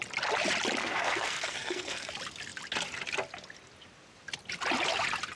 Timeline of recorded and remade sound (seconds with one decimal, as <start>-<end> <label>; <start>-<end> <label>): 0.0-0.8 recorded; 0.8-2.1 remade; 2.1-5.4 recorded